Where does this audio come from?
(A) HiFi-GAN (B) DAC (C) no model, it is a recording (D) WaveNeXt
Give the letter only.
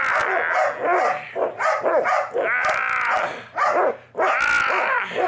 C